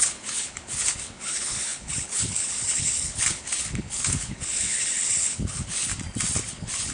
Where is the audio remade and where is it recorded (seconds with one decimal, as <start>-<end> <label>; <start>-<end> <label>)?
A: 0.0-5.9 remade; 5.9-6.5 recorded; 6.5-6.9 remade